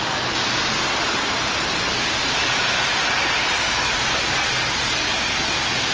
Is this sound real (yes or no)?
yes